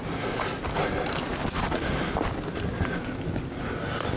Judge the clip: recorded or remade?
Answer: recorded